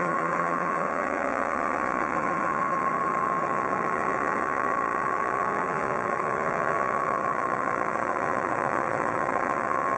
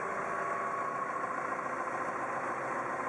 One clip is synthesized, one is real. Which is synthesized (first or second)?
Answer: first